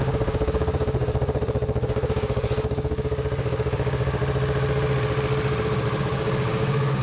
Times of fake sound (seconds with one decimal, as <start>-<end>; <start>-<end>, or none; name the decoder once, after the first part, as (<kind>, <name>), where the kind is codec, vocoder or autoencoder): 0.0-4.2 (codec, DAC); 6.0-7.0

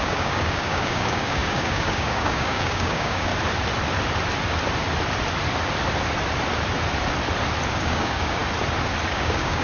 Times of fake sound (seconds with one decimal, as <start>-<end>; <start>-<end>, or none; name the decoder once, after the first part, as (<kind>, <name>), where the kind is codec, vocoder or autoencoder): 0.0-3.3 (codec, DAC); 7.7-8.4; 9.1-9.6

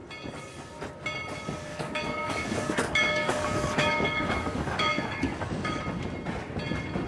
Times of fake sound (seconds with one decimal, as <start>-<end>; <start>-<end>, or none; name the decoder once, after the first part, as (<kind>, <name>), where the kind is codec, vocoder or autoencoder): 1.7-5.8 (codec, DAC)